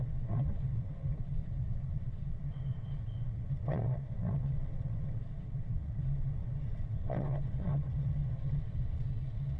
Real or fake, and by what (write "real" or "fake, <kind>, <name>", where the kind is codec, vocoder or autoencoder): fake, vocoder, WaveNeXt